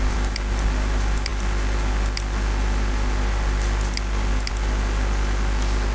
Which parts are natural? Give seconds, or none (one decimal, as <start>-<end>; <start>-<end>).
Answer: 0.0-5.9